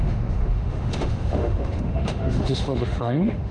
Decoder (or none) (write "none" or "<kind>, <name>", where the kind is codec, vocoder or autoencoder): autoencoder, DAC-VAE